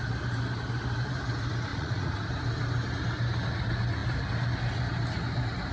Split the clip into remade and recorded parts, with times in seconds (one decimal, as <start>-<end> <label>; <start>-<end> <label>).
0.0-1.7 recorded; 1.7-2.2 remade; 2.2-5.7 recorded